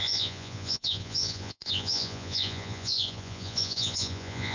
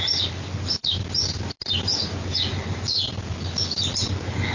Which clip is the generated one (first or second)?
first